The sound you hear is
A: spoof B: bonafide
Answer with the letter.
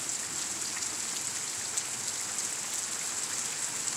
B